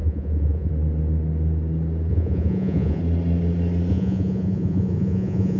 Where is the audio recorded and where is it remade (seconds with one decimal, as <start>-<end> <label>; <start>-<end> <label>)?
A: 0.0-0.7 remade; 0.7-2.1 recorded; 2.1-3.0 remade; 3.0-3.9 recorded; 3.9-5.6 remade